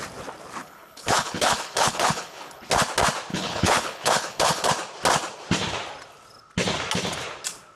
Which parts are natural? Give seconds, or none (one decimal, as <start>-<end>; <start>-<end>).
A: 0.0-0.6; 2.7-3.3; 4.7-7.8